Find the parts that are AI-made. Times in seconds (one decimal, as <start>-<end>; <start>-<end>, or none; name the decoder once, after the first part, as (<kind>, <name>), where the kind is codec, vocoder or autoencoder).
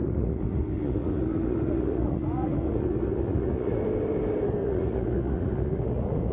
0.0-3.8 (vocoder, Vocos); 4.6-6.3